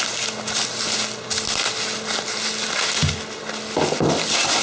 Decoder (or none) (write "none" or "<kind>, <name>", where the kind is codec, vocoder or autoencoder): none